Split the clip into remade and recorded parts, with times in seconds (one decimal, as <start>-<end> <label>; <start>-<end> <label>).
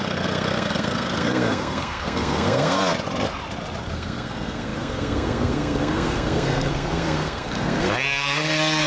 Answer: 0.0-2.8 remade; 2.8-3.9 recorded; 3.9-8.9 remade